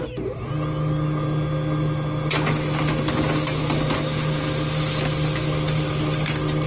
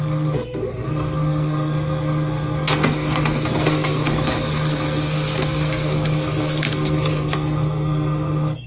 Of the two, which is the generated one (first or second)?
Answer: second